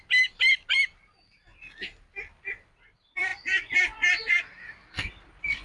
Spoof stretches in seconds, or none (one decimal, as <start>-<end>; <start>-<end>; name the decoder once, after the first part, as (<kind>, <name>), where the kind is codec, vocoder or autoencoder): 0.0-1.5 (vocoder, BigVGAN v2); 2.7-3.3; 4.2-5.6